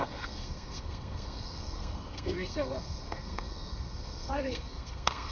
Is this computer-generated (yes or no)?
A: yes